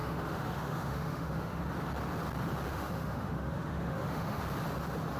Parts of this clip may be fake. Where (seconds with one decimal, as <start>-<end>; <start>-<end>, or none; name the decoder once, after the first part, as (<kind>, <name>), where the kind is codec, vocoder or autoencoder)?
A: 0.0-1.6 (autoencoder, DAC-VAE); 2.7-4.4